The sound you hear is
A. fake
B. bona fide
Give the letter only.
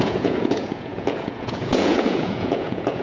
A